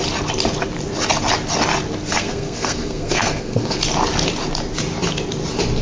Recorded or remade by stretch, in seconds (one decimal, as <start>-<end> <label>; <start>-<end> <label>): 0.0-2.1 recorded; 2.1-3.8 remade; 3.8-5.8 recorded